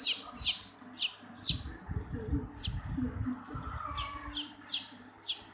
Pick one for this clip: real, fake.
real